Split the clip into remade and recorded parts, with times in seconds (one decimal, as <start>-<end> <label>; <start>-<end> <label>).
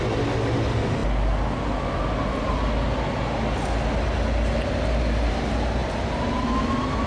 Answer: 0.0-7.1 recorded